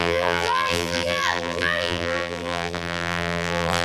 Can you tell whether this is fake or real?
fake